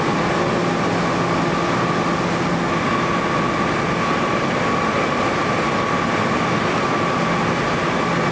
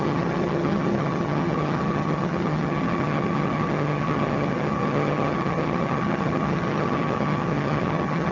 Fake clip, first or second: second